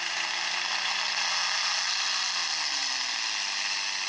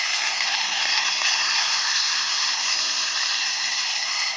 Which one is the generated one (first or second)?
second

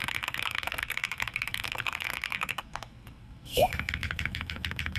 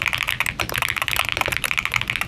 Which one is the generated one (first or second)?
first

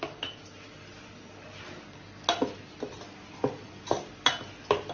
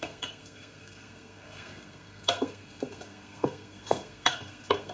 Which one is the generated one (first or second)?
second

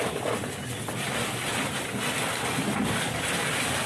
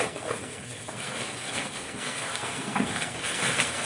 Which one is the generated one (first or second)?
second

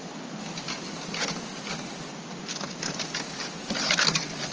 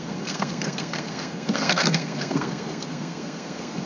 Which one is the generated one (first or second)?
second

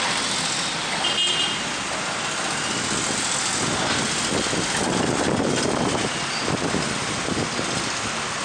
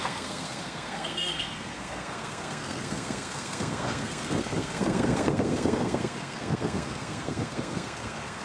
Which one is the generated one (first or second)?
second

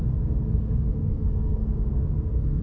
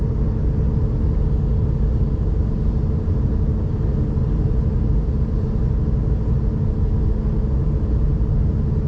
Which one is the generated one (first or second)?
first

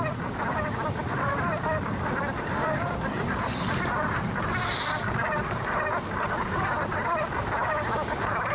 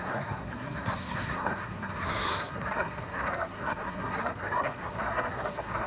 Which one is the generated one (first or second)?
second